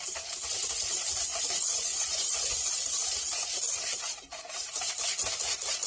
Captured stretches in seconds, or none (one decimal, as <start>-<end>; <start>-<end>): 0.0-1.3; 2.7-5.9